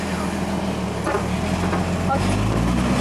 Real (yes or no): yes